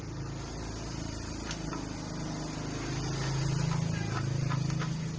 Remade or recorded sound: recorded